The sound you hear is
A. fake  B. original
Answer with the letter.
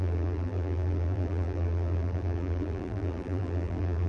A